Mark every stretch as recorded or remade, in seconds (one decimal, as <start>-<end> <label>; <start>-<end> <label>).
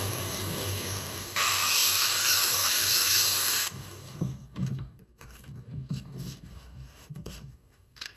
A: 0.0-8.2 remade